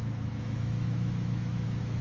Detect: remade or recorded remade